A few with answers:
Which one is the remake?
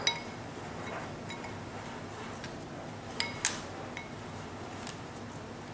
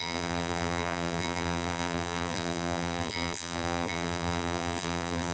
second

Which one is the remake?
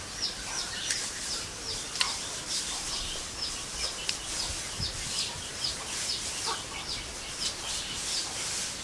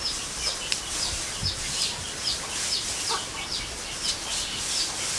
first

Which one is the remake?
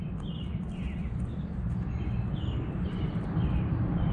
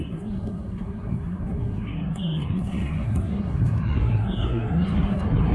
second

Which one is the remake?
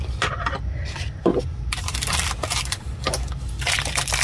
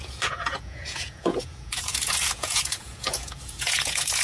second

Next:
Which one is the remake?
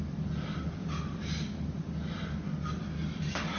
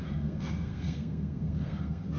second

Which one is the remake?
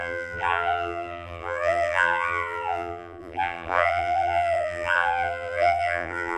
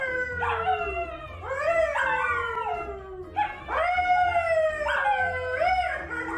first